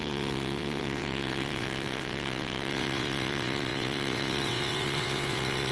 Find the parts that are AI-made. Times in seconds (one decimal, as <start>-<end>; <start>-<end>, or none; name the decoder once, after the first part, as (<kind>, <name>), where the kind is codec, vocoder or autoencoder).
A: 0.0-5.7 (vocoder, WaveNeXt)